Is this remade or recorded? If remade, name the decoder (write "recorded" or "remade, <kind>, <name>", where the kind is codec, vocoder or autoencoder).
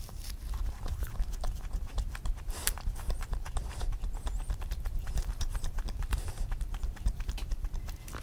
remade, vocoder, BigVGAN v2